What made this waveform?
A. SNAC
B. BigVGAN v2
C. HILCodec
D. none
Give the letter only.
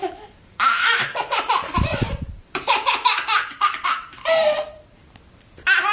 B